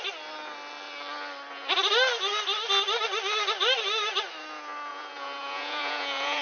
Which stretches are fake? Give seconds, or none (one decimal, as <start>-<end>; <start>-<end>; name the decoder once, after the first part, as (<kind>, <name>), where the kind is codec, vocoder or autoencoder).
4.9-6.4 (vocoder, Vocos)